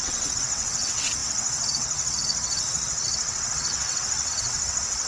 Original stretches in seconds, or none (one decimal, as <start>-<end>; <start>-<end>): none